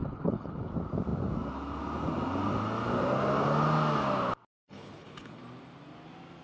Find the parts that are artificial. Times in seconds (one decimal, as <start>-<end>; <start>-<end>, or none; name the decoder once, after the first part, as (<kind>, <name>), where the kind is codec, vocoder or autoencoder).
0.0-0.7 (codec, HILCodec); 4.6-5.4

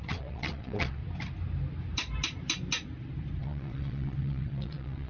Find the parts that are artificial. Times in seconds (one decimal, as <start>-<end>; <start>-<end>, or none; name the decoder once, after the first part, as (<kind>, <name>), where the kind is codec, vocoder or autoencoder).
0.0-1.0 (vocoder, WaveNeXt); 3.4-5.1

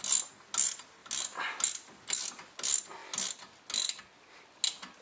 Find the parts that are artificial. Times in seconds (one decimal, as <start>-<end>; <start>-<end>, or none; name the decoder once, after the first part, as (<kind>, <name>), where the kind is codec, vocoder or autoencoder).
none

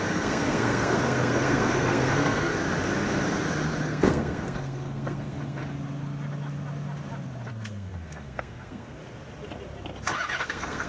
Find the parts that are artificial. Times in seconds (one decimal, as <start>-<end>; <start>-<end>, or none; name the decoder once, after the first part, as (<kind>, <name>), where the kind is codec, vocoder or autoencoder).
0.0-2.5 (codec, SNAC); 3.8-5.6; 7.5-9.0; 10.4-10.9